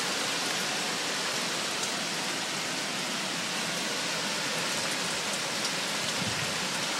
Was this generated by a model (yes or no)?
no